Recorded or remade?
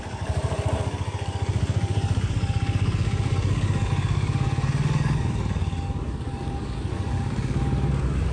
remade